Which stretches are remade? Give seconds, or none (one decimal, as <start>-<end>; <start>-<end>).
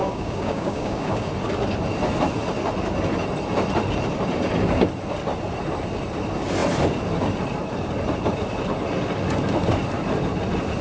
0.0-1.3